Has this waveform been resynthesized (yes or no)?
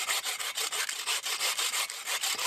no